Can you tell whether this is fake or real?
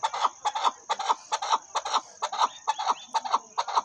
real